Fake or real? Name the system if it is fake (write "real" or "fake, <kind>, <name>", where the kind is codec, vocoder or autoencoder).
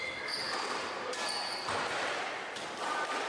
real